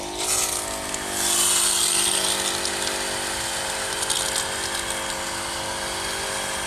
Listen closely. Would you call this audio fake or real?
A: real